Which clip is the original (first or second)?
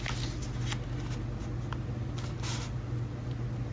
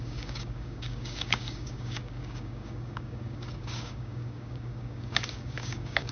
first